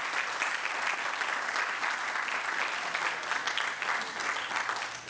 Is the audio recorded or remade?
recorded